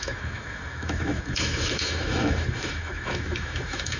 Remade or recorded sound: remade